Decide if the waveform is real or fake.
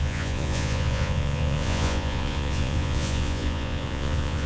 fake